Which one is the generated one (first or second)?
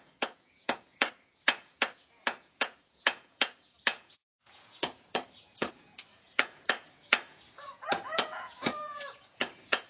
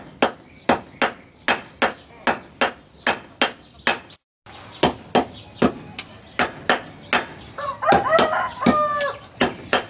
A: first